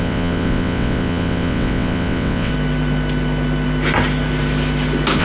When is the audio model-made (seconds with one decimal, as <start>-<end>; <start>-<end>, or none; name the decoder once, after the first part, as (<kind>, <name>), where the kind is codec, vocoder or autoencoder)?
0.0-2.5 (vocoder, WaveNeXt)